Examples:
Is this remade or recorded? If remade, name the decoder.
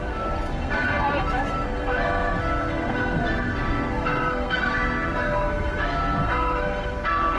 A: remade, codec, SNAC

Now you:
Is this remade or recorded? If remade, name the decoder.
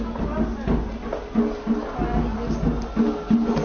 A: recorded